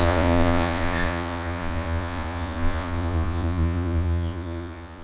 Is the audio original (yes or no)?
no